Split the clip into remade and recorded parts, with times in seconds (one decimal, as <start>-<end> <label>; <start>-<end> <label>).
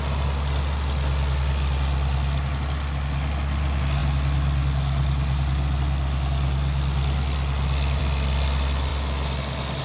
0.0-9.8 recorded